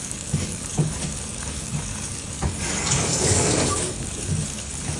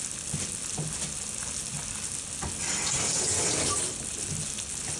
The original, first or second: second